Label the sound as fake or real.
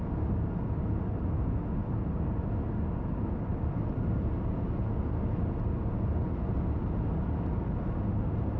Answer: real